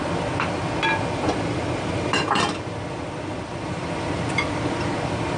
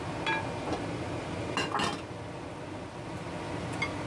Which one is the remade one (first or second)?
first